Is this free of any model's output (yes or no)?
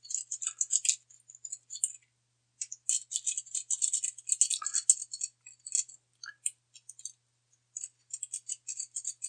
yes